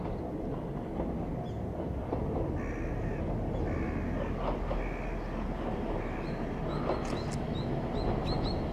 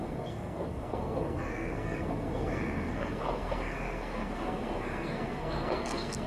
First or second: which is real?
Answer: first